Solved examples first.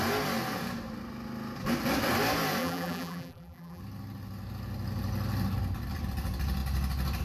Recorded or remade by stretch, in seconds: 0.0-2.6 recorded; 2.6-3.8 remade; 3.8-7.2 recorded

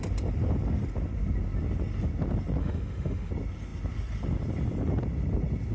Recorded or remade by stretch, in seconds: 0.0-2.6 recorded; 2.6-3.3 remade; 3.3-5.7 recorded

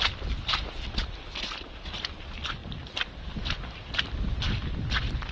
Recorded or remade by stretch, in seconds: 0.0-5.3 recorded

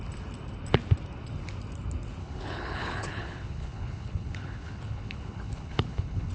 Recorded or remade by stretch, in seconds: 0.0-2.2 recorded; 2.2-6.3 remade

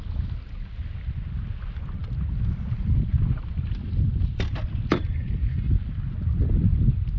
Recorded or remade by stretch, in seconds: 0.0-7.2 recorded